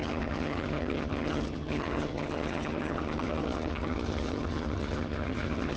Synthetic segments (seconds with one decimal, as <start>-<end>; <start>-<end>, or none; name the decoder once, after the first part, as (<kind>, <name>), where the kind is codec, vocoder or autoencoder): 0.0-5.8 (vocoder, HiFi-GAN)